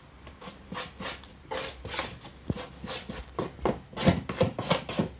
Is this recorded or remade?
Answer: recorded